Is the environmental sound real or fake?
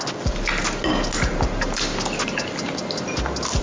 real